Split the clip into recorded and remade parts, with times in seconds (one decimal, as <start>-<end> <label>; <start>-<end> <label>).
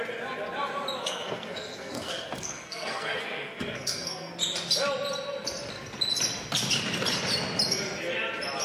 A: 0.0-1.0 recorded; 1.0-4.3 remade; 4.3-8.6 recorded